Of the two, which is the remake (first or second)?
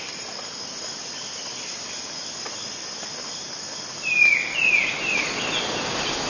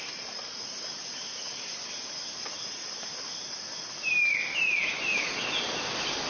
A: second